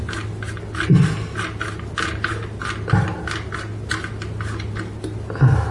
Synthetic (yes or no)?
no